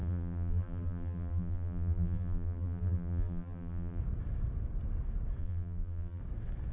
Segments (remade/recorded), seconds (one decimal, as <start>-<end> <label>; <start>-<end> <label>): 0.0-4.0 remade; 4.0-5.4 recorded; 5.4-6.2 remade; 6.2-6.7 recorded